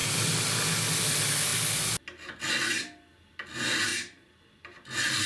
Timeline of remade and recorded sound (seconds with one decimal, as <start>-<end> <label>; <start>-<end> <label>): 0.0-3.9 recorded; 3.9-4.4 remade; 4.4-5.3 recorded